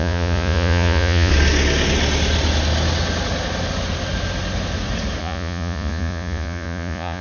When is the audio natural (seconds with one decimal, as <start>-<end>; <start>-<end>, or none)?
1.3-5.2